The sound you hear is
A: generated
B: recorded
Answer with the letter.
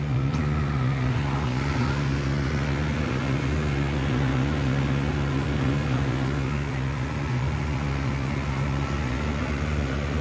A